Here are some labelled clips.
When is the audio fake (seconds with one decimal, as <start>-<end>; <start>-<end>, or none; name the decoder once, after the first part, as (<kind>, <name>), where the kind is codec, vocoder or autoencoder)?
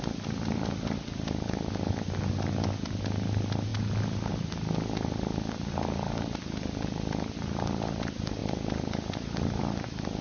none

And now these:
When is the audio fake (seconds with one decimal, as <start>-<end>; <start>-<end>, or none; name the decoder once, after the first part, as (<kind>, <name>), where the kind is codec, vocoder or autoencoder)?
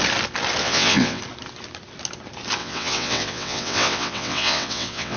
0.6-1.2 (vocoder, WaveNeXt); 2.6-5.2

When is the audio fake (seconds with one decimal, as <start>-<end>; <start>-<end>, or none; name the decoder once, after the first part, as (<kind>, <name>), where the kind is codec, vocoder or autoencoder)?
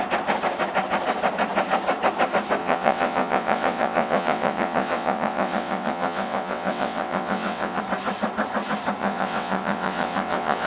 2.6-7.8 (vocoder, WaveNeXt); 9.0-10.7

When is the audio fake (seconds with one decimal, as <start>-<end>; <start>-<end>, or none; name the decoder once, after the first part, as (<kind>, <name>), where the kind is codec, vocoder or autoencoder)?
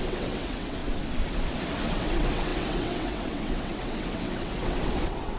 0.0-0.8 (vocoder, WaveNeXt); 1.9-5.4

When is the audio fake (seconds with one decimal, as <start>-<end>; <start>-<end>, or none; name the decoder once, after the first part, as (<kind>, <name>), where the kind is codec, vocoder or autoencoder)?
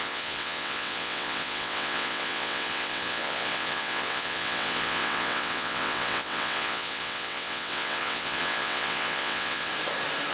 0.0-9.7 (vocoder, WaveNeXt)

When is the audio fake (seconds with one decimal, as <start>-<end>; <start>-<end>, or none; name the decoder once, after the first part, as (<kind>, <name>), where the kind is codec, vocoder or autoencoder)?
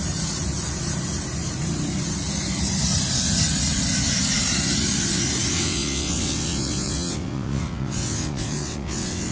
5.5-9.3 (vocoder, WaveNeXt)